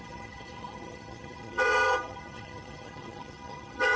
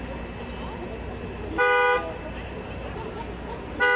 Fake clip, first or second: first